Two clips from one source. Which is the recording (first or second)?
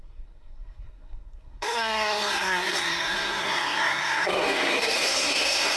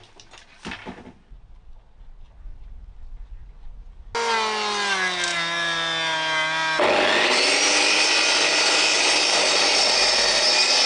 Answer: second